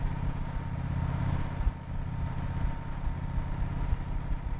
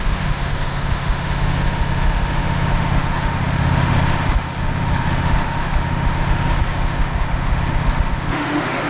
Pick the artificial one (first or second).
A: second